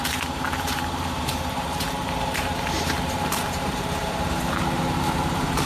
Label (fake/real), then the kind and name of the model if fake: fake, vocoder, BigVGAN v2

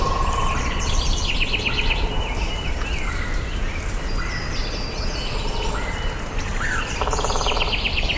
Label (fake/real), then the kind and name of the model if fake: real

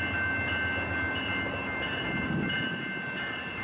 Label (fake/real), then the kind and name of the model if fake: real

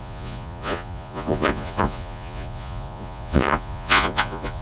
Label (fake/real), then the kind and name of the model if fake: fake, vocoder, Vocos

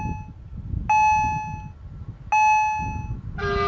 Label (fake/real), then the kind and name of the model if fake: real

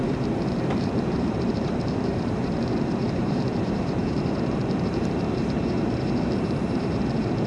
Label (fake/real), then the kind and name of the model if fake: fake, vocoder, BigVGAN v2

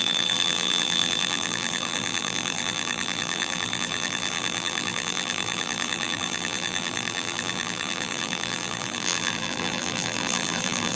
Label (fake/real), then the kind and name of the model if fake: fake, vocoder, BigVGAN v2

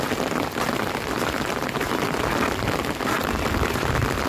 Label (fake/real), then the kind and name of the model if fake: real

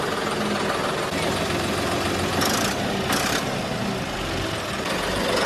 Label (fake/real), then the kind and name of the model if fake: real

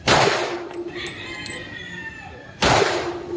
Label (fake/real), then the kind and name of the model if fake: fake, vocoder, BigVGAN v2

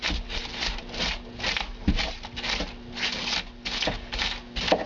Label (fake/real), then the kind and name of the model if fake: real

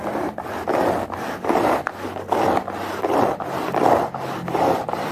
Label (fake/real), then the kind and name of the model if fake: real